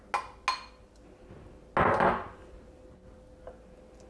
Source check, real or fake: real